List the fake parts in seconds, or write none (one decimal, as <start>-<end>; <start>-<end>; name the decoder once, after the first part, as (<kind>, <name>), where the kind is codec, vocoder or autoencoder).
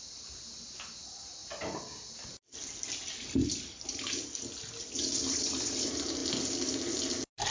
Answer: none